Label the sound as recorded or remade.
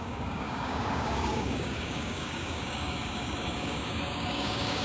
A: remade